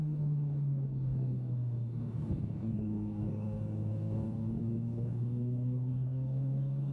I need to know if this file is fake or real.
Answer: fake